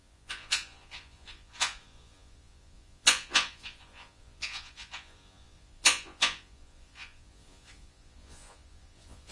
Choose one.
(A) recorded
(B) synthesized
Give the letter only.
B